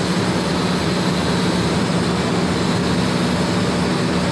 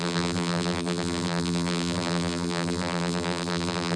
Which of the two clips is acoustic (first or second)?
first